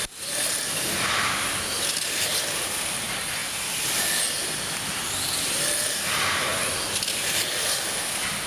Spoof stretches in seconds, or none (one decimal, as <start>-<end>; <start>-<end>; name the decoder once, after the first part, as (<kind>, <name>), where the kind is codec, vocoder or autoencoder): none